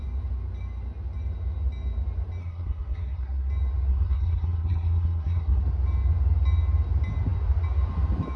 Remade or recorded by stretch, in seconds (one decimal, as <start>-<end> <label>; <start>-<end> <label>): 0.0-2.4 recorded; 2.4-3.5 remade; 3.5-3.9 recorded; 3.9-5.6 remade; 5.6-8.4 recorded